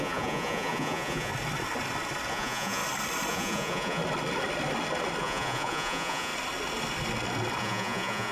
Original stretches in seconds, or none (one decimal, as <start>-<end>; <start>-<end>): 1.3-2.3; 2.8-3.3; 4.0-5.2; 6.3-7.6